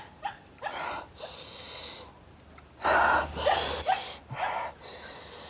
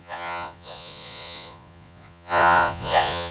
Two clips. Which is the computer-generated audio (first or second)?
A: second